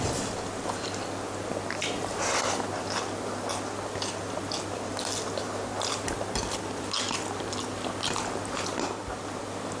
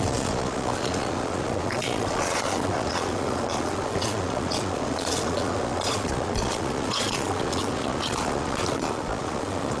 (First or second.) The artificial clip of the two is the second